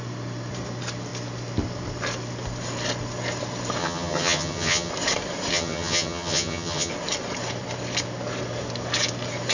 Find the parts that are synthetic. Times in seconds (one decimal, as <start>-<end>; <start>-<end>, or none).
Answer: 3.8-4.9; 5.5-6.9

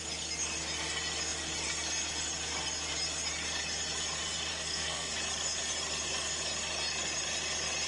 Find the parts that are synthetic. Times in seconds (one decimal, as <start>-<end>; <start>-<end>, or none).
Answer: 4.5-5.1

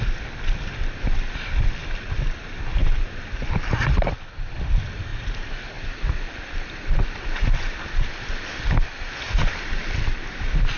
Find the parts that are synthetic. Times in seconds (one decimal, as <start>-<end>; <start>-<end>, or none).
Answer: none